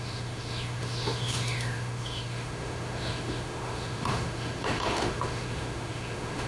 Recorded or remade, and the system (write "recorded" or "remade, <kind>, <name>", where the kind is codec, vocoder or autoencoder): remade, autoencoder, DAC-VAE